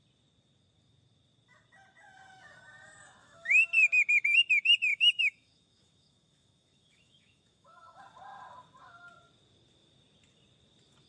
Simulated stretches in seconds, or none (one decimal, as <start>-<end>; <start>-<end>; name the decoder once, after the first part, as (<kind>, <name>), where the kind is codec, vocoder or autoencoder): 3.2-3.7 (autoencoder, DAC-VAE); 4.9-8.0